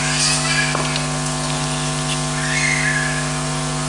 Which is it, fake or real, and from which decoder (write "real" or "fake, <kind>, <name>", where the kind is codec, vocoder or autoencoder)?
real